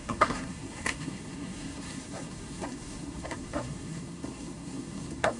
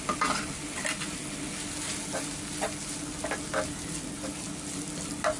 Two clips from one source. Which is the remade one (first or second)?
first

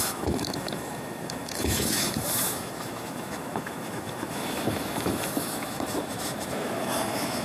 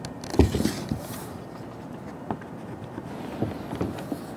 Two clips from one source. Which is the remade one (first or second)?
first